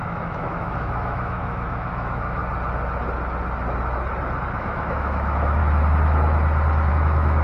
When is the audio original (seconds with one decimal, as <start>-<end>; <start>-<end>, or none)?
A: 2.4-4.5; 5.6-6.9